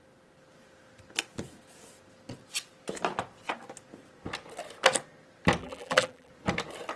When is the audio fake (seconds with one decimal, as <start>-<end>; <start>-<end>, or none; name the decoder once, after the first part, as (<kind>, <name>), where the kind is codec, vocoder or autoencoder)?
5.6-6.3 (vocoder, BigVGAN v2)